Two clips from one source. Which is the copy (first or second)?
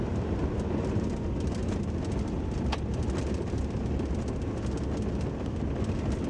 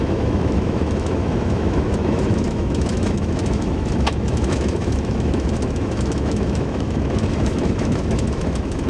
second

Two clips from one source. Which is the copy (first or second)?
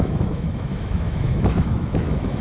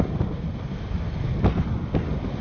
first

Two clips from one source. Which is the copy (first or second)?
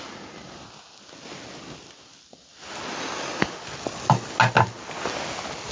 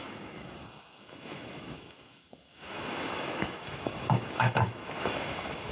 second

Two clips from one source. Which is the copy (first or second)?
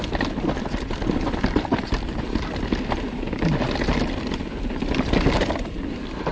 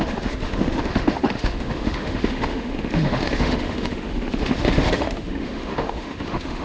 second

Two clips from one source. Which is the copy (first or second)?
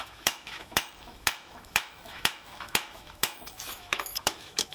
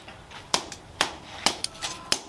first